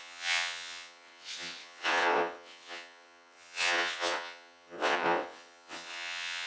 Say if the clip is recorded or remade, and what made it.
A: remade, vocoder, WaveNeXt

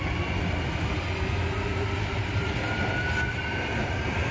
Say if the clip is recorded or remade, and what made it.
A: recorded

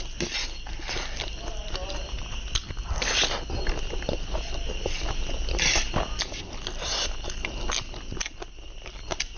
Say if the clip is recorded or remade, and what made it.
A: recorded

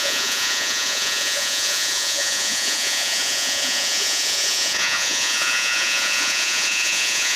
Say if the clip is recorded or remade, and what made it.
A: remade, vocoder, Vocos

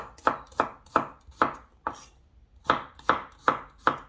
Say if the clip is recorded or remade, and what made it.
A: recorded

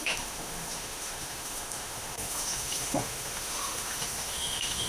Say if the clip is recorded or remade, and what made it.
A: remade, autoencoder, DAC-VAE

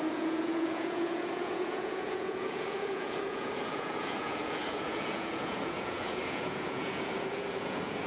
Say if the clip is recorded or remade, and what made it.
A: remade, vocoder, Vocos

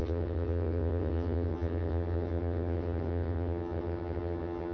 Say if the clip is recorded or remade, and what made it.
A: remade, vocoder, HiFi-GAN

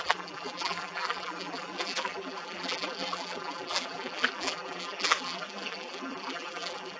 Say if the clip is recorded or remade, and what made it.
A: remade, vocoder, BigVGAN v2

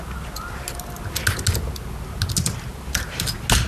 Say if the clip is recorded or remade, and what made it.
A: recorded